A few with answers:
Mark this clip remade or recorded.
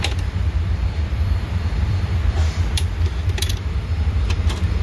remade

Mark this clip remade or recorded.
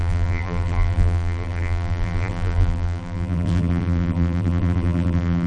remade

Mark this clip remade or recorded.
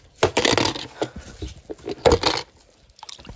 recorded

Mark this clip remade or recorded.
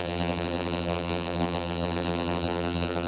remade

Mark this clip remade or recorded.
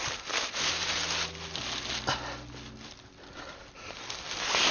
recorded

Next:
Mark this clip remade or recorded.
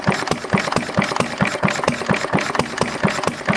recorded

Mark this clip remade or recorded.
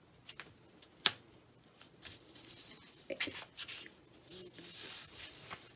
recorded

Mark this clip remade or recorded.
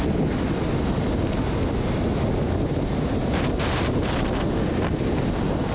recorded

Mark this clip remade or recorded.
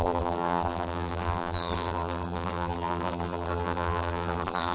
remade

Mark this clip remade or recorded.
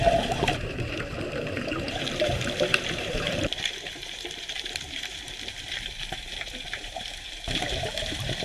remade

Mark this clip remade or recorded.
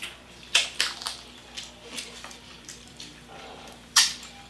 remade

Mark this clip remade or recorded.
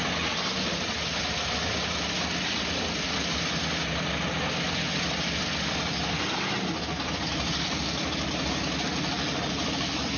recorded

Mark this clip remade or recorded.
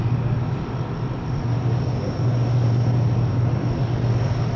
recorded